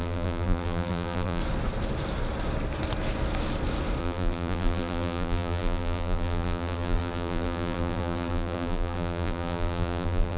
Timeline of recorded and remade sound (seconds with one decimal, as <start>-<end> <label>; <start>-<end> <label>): 0.0-1.4 remade; 1.4-4.0 recorded; 4.0-10.4 remade

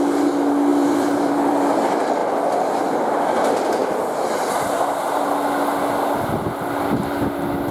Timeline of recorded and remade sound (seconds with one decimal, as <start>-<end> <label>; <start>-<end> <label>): 0.0-0.7 recorded; 0.7-1.6 remade; 1.6-7.7 recorded

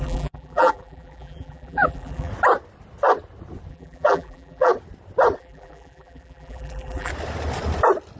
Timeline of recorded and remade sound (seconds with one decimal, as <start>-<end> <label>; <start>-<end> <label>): 0.0-2.3 remade; 2.3-3.7 recorded; 3.7-4.7 remade; 4.7-5.4 recorded; 5.4-7.1 remade; 7.1-8.2 recorded

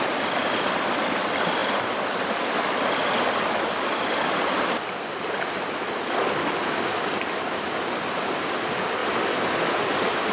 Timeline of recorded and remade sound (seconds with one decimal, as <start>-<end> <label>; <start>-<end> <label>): 0.0-1.6 remade; 1.6-6.9 recorded; 6.9-9.0 remade; 9.0-10.3 recorded

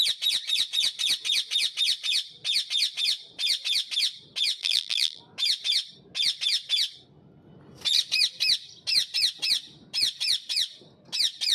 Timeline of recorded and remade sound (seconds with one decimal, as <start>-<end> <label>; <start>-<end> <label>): 0.0-4.6 recorded; 4.6-5.2 remade; 5.2-11.5 recorded

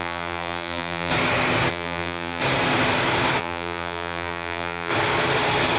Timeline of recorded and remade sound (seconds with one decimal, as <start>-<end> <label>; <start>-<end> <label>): 0.0-1.1 remade; 1.1-1.7 recorded; 1.7-2.4 remade; 2.4-3.4 recorded; 3.4-4.9 remade; 4.9-5.8 recorded